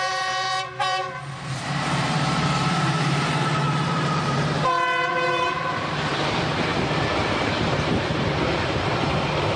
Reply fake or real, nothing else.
fake